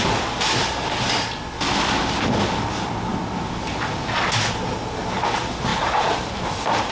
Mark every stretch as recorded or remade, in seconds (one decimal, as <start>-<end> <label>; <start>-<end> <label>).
0.0-5.7 recorded; 5.7-6.9 remade